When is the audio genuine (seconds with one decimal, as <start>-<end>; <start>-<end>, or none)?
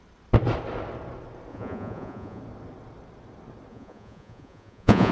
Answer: 0.0-1.5; 2.4-3.7